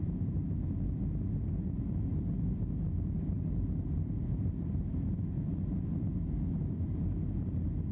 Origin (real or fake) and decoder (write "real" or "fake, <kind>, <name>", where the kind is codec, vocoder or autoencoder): real